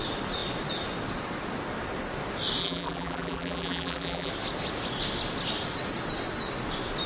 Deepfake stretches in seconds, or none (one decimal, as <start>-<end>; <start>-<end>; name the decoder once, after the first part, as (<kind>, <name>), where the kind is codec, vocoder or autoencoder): 2.6-4.3 (vocoder, BigVGAN v2)